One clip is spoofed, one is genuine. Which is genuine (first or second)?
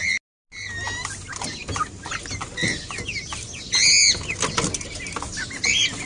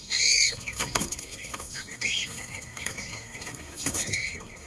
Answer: first